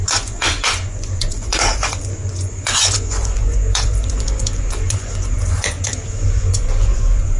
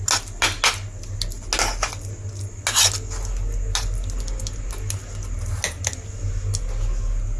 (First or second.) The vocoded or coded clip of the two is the first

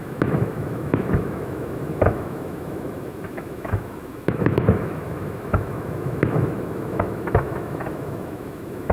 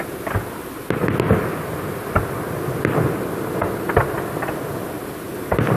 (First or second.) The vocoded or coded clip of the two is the first